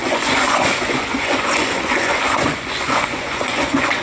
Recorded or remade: remade